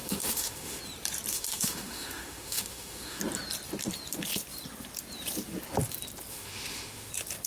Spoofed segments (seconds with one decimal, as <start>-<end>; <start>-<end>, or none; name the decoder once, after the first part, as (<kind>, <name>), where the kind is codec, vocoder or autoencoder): 0.0-0.8 (autoencoder, DAC-VAE); 1.3-3.2; 6.3-7.1